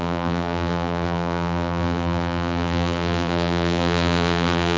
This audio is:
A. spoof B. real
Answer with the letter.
A